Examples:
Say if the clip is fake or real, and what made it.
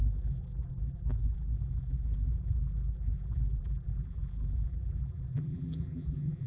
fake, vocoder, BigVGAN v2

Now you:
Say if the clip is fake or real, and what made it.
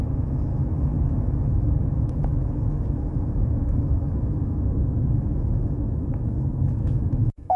fake, autoencoder, DAC-VAE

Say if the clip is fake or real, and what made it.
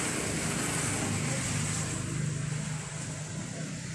real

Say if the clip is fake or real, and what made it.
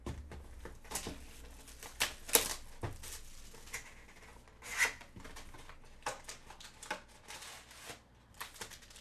real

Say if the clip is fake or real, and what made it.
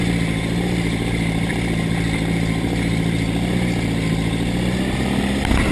real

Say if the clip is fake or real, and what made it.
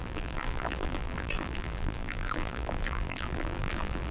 fake, vocoder, BigVGAN v2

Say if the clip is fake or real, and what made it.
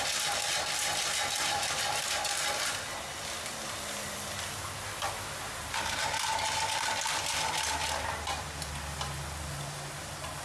real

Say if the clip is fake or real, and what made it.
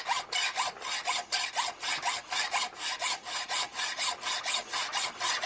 real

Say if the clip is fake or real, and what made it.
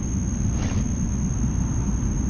real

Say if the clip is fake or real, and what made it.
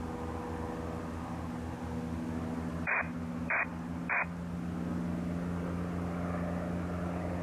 real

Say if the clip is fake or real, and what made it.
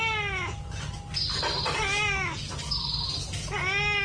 real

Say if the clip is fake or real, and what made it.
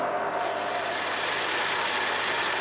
real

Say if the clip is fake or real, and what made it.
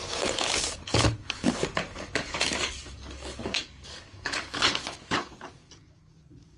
fake, codec, DAC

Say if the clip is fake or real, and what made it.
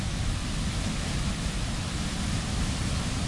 real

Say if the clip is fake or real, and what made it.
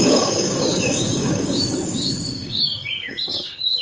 fake, codec, DAC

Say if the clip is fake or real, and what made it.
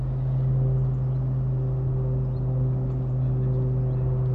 real